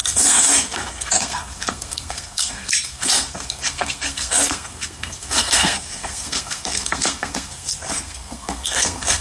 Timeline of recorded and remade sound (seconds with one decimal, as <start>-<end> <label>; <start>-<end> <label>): 0.0-9.2 remade